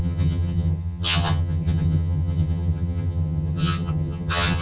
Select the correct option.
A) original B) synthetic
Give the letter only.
B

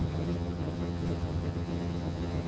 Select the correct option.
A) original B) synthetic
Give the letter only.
B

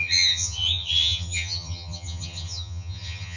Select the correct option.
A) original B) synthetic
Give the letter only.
B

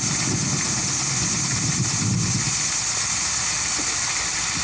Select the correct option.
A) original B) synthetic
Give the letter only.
A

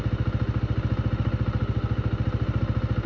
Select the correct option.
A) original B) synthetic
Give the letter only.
A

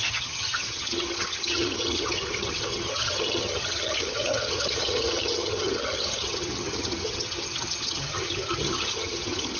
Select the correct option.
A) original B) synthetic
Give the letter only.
B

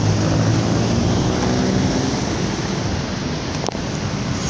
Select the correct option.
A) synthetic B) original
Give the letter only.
B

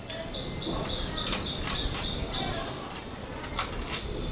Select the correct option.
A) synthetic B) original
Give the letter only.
B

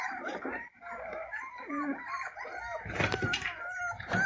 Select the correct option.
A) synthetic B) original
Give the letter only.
B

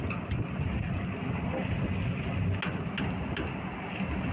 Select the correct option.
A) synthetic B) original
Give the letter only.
B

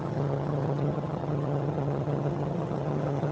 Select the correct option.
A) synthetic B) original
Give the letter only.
A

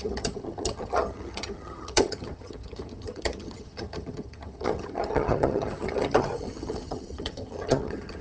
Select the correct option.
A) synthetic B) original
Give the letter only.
A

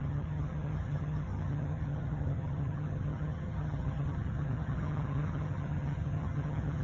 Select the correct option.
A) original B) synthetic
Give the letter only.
B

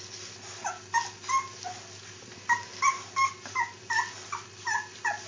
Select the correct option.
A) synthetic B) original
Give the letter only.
B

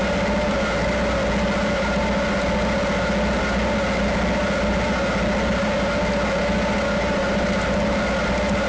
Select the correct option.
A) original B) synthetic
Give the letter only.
A